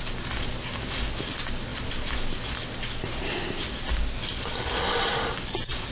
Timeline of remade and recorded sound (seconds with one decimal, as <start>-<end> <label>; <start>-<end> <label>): 0.0-5.9 recorded